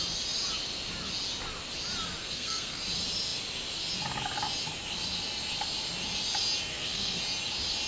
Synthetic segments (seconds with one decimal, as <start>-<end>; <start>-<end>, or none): 2.2-2.8; 6.7-7.2